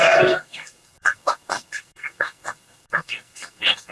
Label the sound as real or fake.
fake